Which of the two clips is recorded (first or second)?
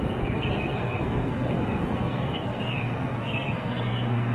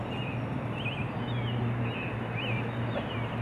second